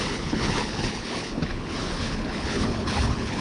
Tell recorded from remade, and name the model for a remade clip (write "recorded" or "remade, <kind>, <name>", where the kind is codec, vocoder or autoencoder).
remade, codec, HILCodec